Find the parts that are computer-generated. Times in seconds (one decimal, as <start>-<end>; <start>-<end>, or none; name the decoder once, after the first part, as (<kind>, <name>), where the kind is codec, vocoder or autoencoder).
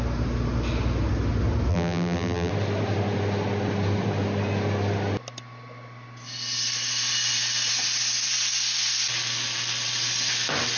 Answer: 1.7-2.5 (vocoder, BigVGAN v2)